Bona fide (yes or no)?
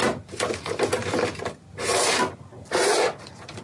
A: yes